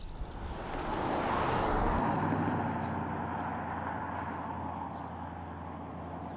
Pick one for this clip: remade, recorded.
recorded